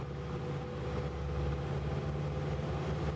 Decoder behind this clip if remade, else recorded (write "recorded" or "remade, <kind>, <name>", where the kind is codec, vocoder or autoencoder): recorded